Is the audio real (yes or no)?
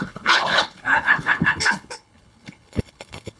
no